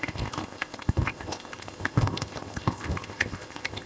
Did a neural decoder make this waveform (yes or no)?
yes